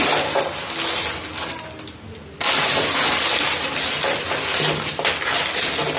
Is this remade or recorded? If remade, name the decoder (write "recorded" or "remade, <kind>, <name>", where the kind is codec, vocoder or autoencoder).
recorded